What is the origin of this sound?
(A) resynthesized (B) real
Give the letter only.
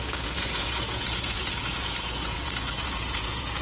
A